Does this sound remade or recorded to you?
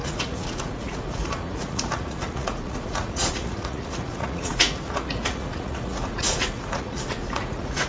remade